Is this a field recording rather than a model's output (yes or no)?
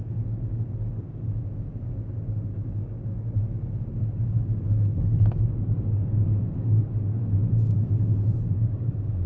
no